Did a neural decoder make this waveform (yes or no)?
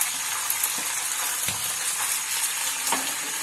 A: no